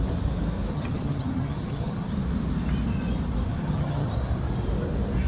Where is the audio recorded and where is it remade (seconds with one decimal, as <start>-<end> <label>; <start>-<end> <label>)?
0.0-0.7 recorded; 0.7-2.1 remade; 2.1-3.5 recorded; 3.5-4.1 remade; 4.1-5.3 recorded